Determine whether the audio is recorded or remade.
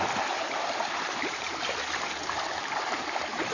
remade